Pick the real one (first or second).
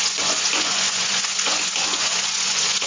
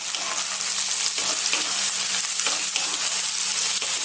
second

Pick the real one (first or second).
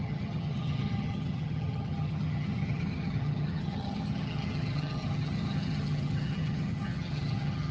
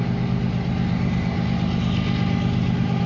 second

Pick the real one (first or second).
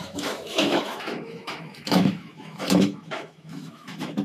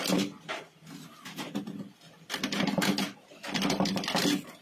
second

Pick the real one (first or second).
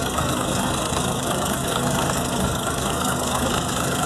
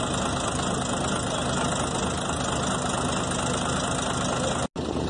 second